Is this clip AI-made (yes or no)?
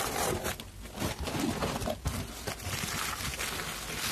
no